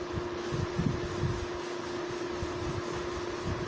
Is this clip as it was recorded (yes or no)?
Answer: yes